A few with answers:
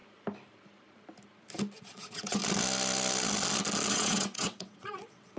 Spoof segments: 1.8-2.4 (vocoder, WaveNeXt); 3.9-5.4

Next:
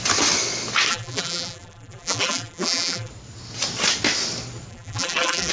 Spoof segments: 0.9-3.1 (vocoder, BigVGAN v2); 4.7-5.5

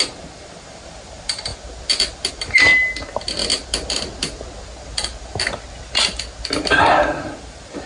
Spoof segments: 0.0-1.5 (vocoder, BigVGAN v2); 2.3-2.7; 7.2-7.9

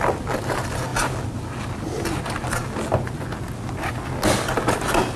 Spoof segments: none

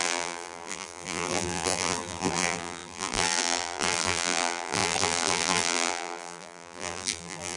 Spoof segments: 0.0-7.6 (vocoder, BigVGAN v2)

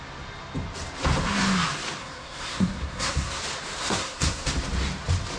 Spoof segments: 2.0-3.4 (codec, SNAC); 3.8-4.5

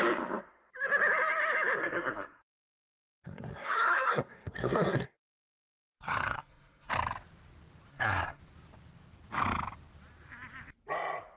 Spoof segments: 1.8-6.9 (codec, SNAC); 7.9-8.4

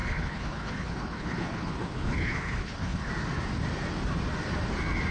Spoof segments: 0.0-3.1 (codec, HILCodec)